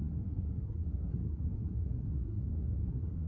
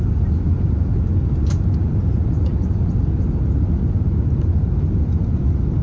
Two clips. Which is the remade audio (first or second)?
first